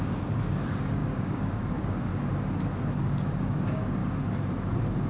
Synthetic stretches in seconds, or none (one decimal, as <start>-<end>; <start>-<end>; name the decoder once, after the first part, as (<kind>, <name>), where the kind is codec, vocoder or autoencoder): 0.0-2.1 (codec, DAC); 3.0-4.0